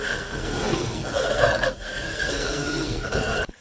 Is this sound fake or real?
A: fake